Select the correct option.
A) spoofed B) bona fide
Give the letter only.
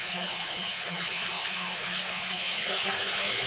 A